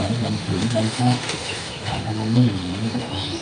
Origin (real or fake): fake